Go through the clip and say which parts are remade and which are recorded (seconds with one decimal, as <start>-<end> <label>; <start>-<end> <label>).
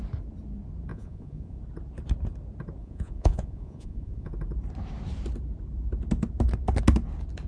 0.0-0.9 recorded; 0.9-1.6 remade; 1.6-2.8 recorded; 2.8-4.3 remade; 4.3-7.5 recorded